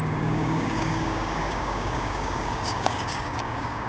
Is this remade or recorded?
remade